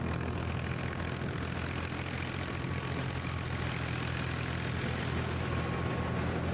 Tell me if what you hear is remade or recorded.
recorded